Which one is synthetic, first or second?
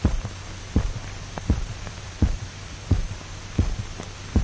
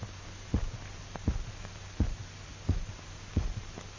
first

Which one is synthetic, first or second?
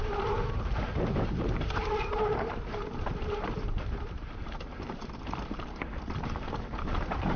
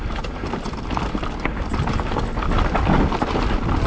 first